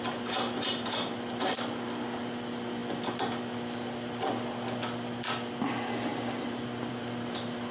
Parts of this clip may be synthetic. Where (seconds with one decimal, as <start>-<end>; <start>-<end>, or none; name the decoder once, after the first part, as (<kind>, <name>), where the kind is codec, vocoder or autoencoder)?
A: none